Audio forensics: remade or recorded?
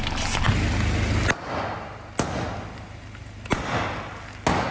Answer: recorded